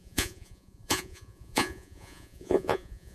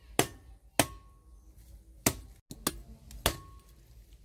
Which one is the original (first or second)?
second